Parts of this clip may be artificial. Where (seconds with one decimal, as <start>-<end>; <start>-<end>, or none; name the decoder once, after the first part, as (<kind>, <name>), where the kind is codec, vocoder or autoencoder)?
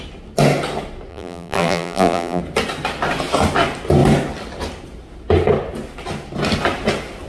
1.1-2.4 (vocoder, BigVGAN v2)